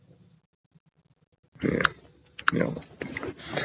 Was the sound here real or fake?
real